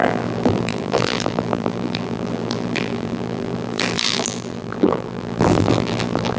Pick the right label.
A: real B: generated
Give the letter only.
B